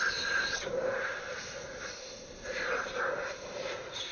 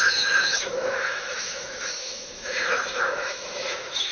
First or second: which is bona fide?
first